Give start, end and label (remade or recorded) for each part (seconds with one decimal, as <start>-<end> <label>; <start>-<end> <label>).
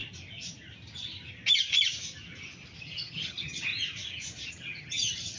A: 0.0-2.8 recorded; 2.8-3.7 remade; 3.7-4.5 recorded; 4.5-5.4 remade